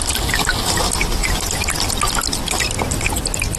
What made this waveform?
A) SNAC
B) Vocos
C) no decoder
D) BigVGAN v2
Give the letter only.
D